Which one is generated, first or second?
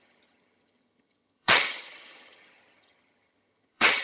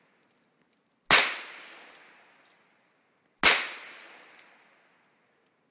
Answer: first